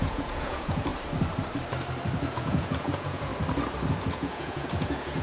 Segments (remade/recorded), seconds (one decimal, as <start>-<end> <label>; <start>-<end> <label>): 0.0-0.9 remade; 0.9-2.3 recorded; 2.3-3.3 remade; 3.3-3.9 recorded; 3.9-5.2 remade

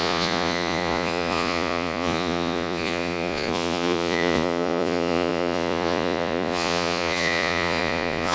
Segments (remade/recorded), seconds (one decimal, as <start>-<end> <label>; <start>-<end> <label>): 0.0-8.3 remade

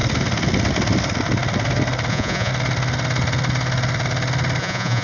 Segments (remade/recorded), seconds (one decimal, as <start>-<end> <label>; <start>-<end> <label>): 0.0-2.1 recorded; 2.1-2.5 remade; 2.5-4.6 recorded; 4.6-5.0 remade

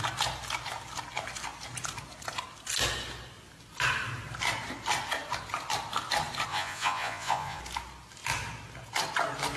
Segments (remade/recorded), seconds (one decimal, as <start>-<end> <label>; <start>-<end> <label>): 0.0-6.5 recorded; 6.5-7.6 remade; 7.6-9.6 recorded

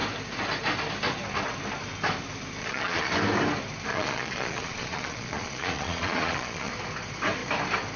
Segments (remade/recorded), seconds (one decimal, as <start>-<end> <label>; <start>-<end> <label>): 0.0-2.6 recorded; 2.6-3.1 remade; 3.1-3.9 recorded; 3.9-6.7 remade; 6.7-8.0 recorded

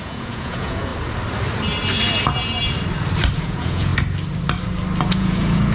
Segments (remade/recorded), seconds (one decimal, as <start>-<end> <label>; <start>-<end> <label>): 0.0-0.9 remade; 0.9-3.4 recorded; 3.4-3.9 remade; 3.9-5.1 recorded; 5.1-5.7 remade

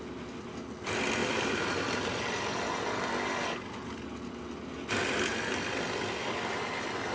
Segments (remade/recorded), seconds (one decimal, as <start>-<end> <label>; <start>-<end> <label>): 0.0-7.1 recorded